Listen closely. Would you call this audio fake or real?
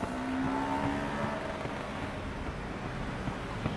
real